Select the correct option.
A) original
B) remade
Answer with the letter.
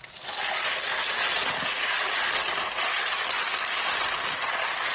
A